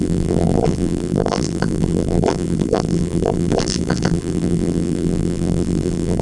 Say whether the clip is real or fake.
fake